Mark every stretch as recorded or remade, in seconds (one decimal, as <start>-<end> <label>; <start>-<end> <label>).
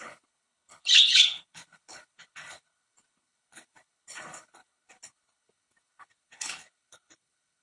0.0-7.6 remade